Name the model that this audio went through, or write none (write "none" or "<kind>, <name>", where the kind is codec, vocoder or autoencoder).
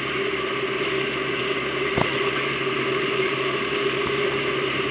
none